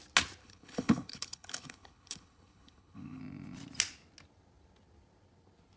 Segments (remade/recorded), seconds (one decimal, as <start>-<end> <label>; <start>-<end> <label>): 0.0-0.4 recorded; 0.4-3.2 remade; 3.2-5.8 recorded